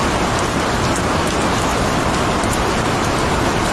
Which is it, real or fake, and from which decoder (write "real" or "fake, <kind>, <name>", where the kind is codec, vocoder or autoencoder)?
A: real